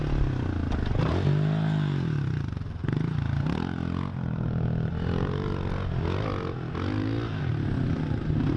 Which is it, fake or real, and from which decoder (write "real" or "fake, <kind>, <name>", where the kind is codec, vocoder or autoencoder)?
real